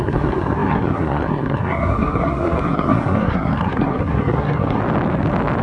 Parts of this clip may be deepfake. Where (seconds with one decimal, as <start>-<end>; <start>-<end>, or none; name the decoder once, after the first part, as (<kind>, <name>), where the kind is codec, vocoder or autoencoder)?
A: 0.0-4.8 (codec, SNAC)